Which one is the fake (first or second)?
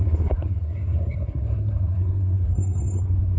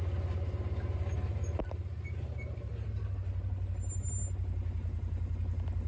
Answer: first